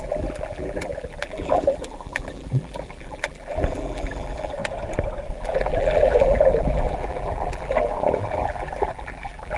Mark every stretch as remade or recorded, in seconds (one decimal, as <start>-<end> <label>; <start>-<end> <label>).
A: 0.0-4.6 remade; 4.6-5.3 recorded; 5.3-9.6 remade